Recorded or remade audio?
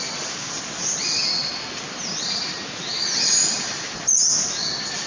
recorded